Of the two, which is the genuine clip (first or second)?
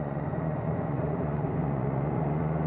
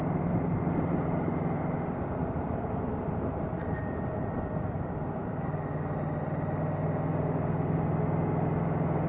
second